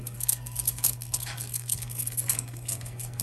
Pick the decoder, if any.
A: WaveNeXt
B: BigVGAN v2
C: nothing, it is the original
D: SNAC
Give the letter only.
D